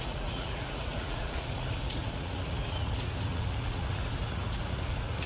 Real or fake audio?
fake